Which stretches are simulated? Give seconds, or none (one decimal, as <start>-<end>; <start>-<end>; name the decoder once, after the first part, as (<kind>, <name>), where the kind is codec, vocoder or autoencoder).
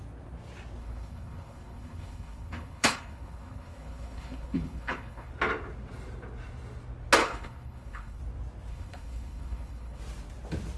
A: 0.8-5.3 (codec, HILCodec); 7.2-8.2; 8.7-10.0